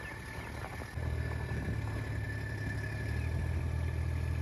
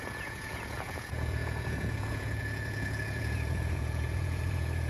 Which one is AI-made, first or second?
second